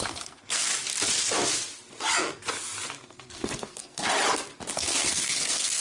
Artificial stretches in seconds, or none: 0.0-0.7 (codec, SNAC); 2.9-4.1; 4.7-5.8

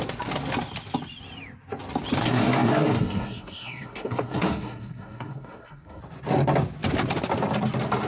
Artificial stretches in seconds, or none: 2.2-6.0 (codec, SNAC)

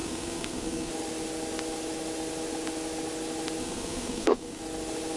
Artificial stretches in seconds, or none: 0.0-0.9 (codec, SNAC); 3.6-4.6